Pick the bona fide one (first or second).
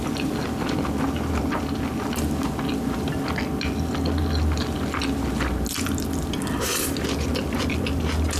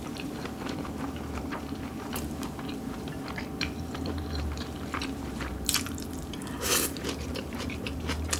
first